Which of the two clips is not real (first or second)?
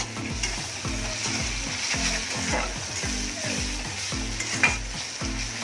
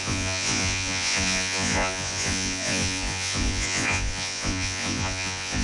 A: second